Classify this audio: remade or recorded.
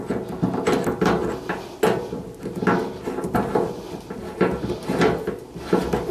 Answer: recorded